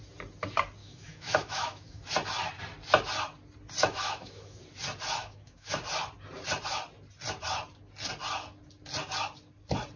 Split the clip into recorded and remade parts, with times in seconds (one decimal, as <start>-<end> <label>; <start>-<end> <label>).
0.0-0.8 recorded; 0.8-2.0 remade; 2.0-3.8 recorded; 3.8-4.6 remade; 4.6-5.2 recorded; 5.2-5.7 remade; 5.7-10.0 recorded

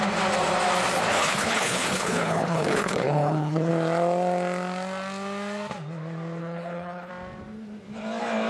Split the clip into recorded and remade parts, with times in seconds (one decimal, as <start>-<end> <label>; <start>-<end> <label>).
0.0-1.1 recorded; 1.1-3.7 remade; 3.7-6.4 recorded; 6.4-7.1 remade; 7.1-8.5 recorded

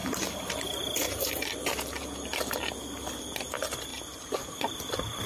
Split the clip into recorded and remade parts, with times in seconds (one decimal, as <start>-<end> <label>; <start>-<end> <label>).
0.0-5.3 recorded

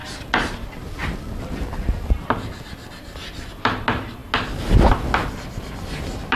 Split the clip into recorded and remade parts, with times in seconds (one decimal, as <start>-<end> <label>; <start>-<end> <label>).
0.0-6.4 recorded

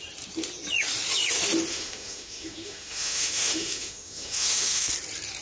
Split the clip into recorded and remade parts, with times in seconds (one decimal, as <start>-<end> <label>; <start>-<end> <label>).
0.0-1.7 recorded; 1.7-4.9 remade; 4.9-5.4 recorded

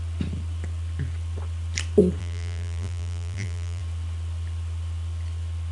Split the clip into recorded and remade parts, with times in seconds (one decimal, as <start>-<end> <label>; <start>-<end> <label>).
0.0-2.2 recorded; 2.2-3.8 remade; 3.8-5.7 recorded

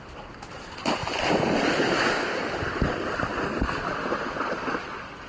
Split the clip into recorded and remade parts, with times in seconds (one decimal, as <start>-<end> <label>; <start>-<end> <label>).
0.0-5.3 recorded

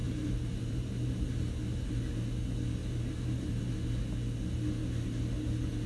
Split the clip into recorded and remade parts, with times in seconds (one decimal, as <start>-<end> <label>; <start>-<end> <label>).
0.0-1.9 remade; 1.9-2.8 recorded; 2.8-3.7 remade; 3.7-5.9 recorded